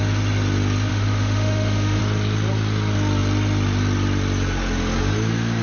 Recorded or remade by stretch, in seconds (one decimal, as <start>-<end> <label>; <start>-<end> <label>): 0.0-0.9 recorded; 0.9-2.0 remade; 2.0-5.6 recorded